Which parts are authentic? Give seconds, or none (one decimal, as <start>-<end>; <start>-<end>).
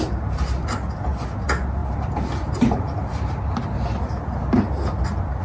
0.0-5.4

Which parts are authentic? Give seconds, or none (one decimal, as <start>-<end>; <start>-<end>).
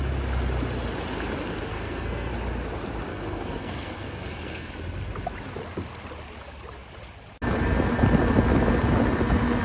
0.0-1.7; 2.3-3.1; 4.7-9.6